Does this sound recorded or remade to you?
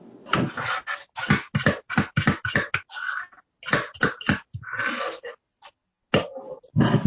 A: recorded